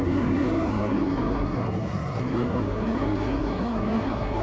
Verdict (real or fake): fake